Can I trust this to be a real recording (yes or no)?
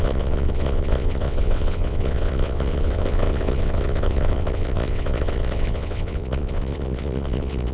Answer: no